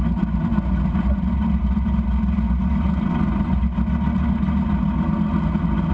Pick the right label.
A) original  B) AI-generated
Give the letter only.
A